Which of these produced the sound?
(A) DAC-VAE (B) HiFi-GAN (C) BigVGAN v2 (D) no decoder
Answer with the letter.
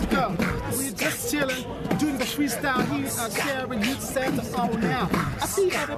D